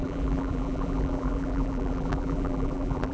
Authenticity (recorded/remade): remade